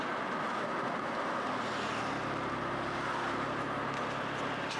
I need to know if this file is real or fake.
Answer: real